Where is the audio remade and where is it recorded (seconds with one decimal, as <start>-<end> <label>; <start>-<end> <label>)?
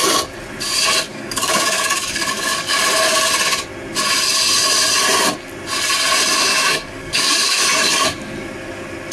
0.0-1.1 recorded; 1.1-2.8 remade; 2.8-6.5 recorded; 6.5-7.6 remade; 7.6-9.1 recorded